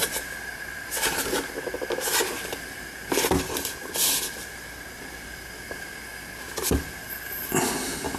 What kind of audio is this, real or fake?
real